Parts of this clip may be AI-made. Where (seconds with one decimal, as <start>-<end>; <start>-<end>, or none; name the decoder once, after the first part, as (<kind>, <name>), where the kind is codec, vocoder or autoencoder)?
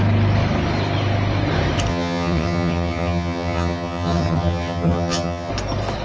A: 1.9-5.5 (vocoder, HiFi-GAN)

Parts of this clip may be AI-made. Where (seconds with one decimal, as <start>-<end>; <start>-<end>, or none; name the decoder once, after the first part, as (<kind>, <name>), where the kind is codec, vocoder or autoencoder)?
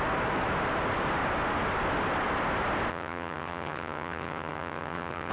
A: 2.9-5.3 (vocoder, HiFi-GAN)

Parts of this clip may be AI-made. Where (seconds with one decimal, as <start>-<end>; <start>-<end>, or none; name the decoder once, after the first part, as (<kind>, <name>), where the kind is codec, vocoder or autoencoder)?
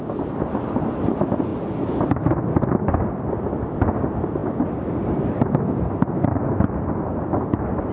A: none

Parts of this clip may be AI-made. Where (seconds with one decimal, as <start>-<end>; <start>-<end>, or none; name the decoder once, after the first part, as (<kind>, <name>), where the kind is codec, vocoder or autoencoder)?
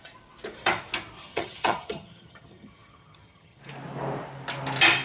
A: 1.2-3.6 (vocoder, HiFi-GAN)